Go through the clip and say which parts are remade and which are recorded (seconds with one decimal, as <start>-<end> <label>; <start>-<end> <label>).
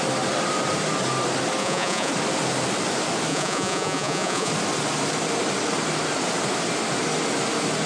0.0-1.6 recorded; 1.6-2.1 remade; 2.1-3.3 recorded; 3.3-4.5 remade; 4.5-7.9 recorded